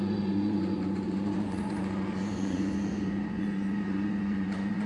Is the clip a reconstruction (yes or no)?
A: yes